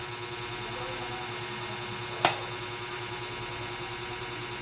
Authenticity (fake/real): real